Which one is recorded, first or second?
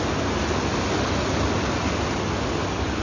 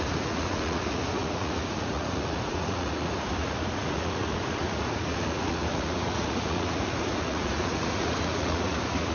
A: first